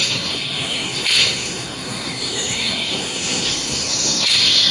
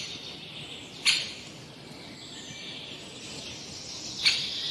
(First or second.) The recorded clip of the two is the second